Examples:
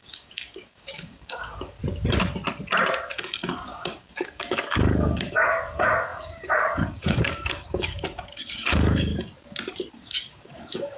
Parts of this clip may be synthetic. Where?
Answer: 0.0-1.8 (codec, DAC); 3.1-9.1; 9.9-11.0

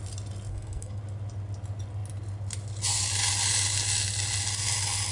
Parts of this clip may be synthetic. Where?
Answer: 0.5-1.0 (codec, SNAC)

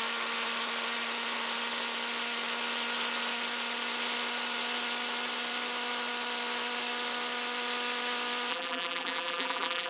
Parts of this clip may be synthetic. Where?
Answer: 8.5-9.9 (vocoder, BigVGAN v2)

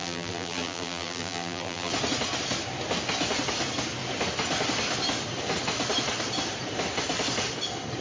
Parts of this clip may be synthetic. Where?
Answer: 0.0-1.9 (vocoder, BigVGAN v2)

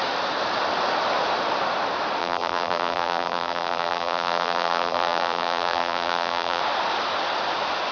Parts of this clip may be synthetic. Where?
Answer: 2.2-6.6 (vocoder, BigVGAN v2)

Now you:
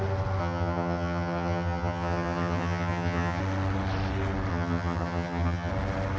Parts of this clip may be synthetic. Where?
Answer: 0.4-3.4 (vocoder, HiFi-GAN); 4.5-5.7